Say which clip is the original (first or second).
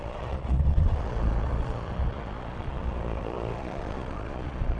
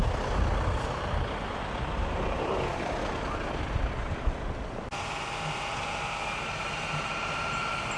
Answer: second